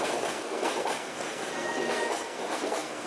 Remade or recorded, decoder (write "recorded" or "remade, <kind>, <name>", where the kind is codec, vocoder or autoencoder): remade, codec, SNAC